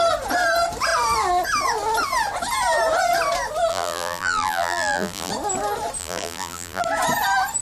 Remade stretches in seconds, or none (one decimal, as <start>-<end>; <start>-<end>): 3.7-5.3; 6.0-6.8